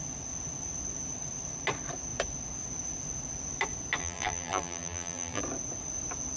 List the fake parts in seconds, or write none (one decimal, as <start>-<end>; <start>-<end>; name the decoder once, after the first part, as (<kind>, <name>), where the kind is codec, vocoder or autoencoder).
4.0-5.4 (vocoder, BigVGAN v2)